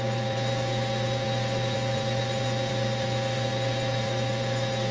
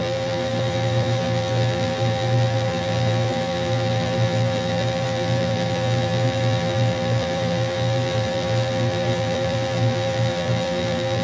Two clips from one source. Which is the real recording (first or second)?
first